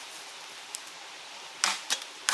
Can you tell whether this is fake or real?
real